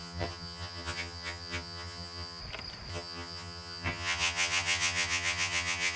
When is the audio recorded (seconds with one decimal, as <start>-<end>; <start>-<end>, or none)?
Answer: 2.4-2.9